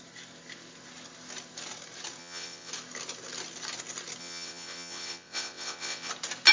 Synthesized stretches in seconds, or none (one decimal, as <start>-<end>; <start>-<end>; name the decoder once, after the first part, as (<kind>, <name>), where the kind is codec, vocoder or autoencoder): 2.2-2.7 (vocoder, WaveNeXt); 4.2-6.1